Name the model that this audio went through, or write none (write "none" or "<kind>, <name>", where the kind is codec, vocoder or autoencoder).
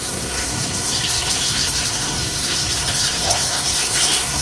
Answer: codec, SNAC